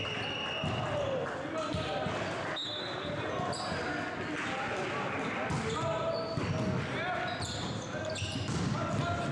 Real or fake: real